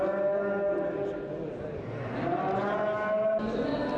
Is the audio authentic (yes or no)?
yes